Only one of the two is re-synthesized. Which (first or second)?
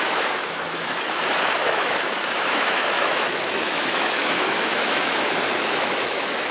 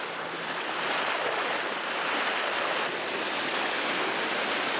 first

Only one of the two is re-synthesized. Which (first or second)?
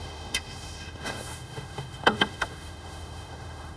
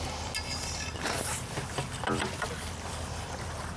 first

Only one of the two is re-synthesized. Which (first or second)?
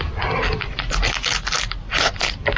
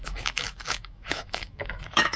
second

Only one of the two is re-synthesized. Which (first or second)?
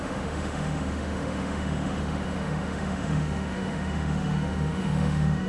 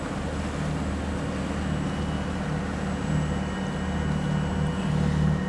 first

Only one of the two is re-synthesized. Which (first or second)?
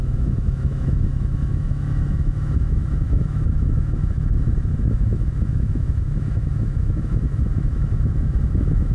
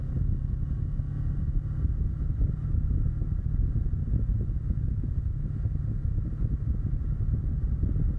first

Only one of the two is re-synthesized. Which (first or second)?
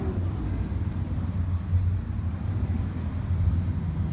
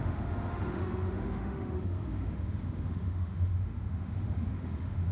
second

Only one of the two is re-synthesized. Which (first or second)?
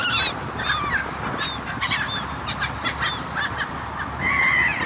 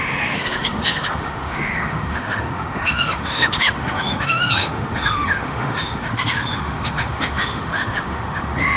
second